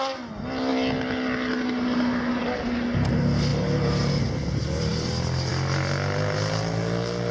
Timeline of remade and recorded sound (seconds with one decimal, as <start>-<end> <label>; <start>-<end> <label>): 0.0-7.3 recorded